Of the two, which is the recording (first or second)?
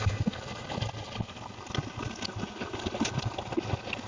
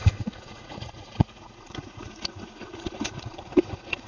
first